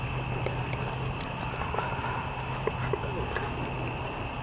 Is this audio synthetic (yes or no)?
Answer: no